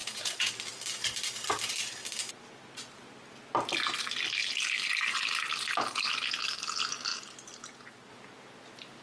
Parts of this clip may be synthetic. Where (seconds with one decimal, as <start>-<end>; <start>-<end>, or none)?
0.0-0.5